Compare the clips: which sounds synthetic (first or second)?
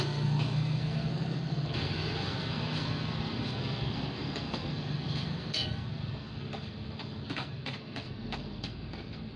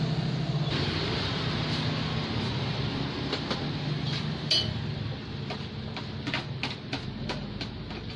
first